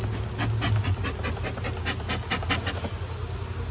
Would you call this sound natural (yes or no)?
yes